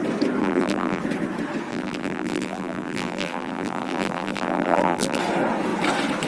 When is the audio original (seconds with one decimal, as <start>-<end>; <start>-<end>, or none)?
0.0-0.4; 1.0-1.7; 5.2-6.3